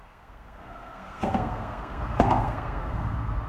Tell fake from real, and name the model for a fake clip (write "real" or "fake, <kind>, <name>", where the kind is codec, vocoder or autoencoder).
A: fake, codec, SNAC